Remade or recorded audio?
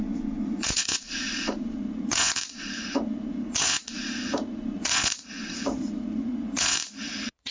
remade